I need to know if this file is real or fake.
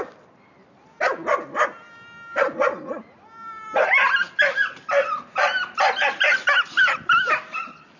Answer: real